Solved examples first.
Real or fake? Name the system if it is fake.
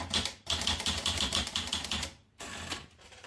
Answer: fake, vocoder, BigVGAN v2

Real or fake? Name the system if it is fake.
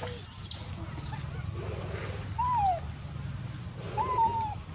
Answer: real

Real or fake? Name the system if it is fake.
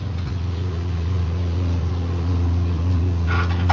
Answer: fake, vocoder, Vocos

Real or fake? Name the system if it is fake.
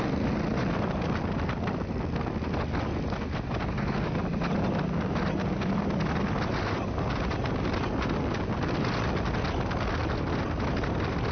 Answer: real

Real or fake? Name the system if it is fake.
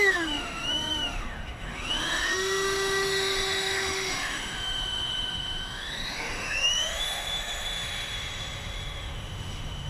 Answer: fake, autoencoder, DAC-VAE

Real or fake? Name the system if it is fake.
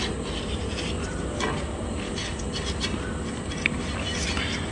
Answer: real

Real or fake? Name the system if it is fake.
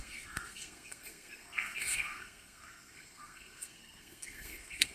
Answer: fake, codec, SNAC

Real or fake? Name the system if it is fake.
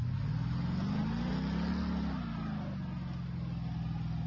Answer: real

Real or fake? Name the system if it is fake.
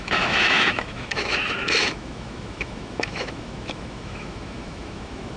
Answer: fake, autoencoder, DAC-VAE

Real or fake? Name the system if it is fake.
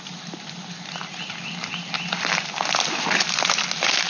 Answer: real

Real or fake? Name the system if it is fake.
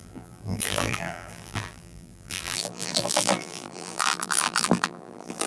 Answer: fake, vocoder, BigVGAN v2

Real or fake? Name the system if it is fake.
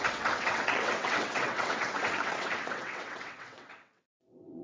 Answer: fake, vocoder, WaveNeXt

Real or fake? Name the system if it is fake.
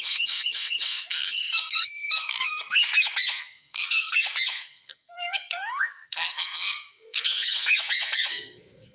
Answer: fake, codec, SNAC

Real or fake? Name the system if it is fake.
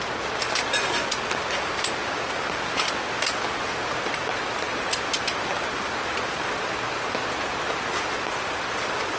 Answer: real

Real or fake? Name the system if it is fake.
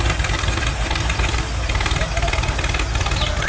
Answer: real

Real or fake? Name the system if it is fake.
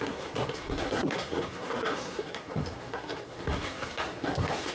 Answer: fake, codec, SNAC